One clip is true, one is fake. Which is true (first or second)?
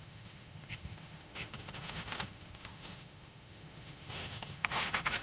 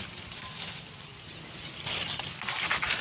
second